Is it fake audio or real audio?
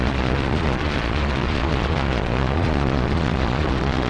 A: fake